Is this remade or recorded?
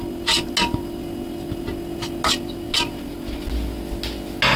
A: recorded